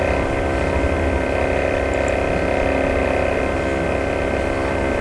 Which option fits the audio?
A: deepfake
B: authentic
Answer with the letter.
B